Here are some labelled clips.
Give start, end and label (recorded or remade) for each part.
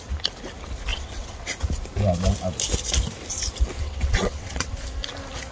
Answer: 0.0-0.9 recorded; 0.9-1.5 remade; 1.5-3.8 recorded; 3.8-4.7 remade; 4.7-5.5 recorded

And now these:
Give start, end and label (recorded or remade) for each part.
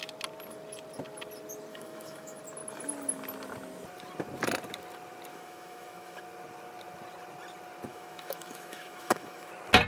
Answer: 0.0-1.7 recorded; 1.7-2.4 remade; 2.4-5.3 recorded; 5.3-6.2 remade; 6.2-7.9 recorded; 7.9-9.5 remade; 9.5-9.9 recorded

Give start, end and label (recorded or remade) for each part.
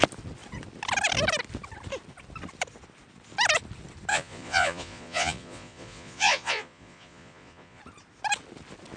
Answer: 0.0-4.1 recorded; 4.1-7.8 remade; 7.8-9.0 recorded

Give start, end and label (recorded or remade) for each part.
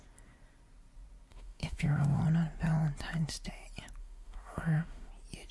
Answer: 0.0-1.3 recorded; 1.3-2.2 remade; 2.2-4.0 recorded; 4.0-5.1 remade; 5.1-5.5 recorded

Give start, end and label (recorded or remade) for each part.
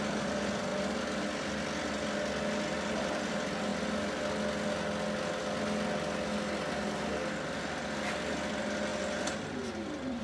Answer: 0.0-0.7 remade; 0.7-2.7 recorded; 2.7-3.7 remade; 3.7-7.6 recorded; 7.6-8.9 remade; 8.9-10.2 recorded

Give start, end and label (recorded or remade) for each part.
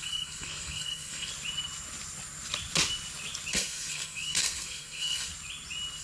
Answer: 0.0-1.3 remade; 1.3-3.5 recorded; 3.5-5.3 remade; 5.3-6.0 recorded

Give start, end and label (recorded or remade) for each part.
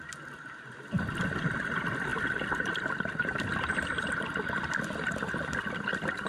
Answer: 0.0-2.1 recorded; 2.1-6.3 remade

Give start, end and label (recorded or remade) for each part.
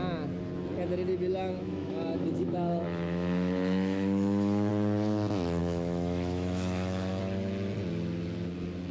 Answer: 0.0-1.5 recorded; 1.5-4.7 remade; 4.7-5.6 recorded; 5.6-7.2 remade; 7.2-8.9 recorded